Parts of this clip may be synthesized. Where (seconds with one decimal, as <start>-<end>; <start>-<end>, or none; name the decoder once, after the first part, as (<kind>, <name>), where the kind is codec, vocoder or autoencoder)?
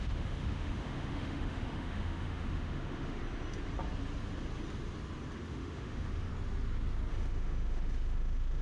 0.0-3.2 (autoencoder, DAC-VAE); 5.5-6.3; 7.1-8.6